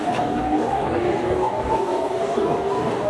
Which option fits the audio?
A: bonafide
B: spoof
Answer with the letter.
B